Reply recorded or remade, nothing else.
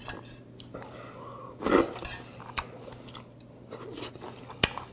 recorded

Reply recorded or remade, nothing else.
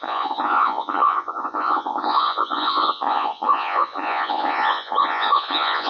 remade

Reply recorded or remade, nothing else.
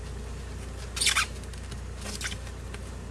recorded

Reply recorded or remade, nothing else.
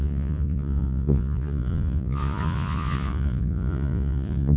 remade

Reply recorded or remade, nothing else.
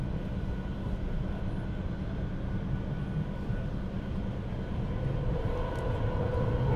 recorded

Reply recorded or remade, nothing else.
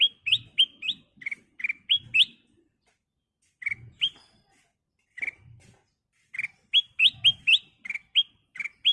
recorded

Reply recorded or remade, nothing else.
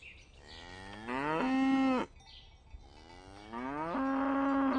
recorded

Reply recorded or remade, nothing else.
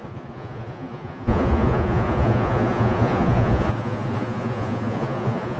remade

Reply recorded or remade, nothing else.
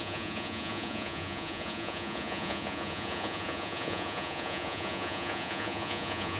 remade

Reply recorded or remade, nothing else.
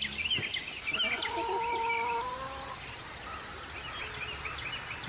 recorded